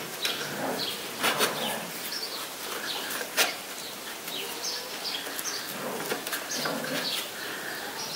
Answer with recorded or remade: recorded